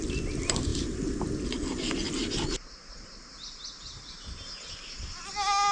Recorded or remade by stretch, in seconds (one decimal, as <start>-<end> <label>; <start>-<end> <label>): 0.0-5.7 recorded